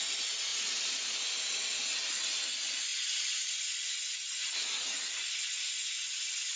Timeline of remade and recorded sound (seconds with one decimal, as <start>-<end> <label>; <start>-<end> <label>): 0.0-6.6 recorded